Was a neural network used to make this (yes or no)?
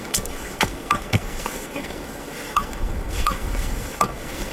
yes